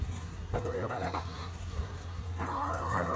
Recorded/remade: remade